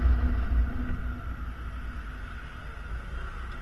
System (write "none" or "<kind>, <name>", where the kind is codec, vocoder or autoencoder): none